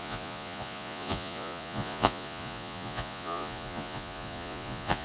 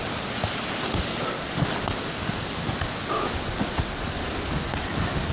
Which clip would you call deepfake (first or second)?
first